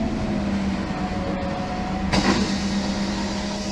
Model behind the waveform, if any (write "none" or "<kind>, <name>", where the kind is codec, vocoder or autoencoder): none